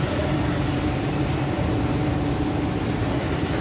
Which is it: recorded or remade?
remade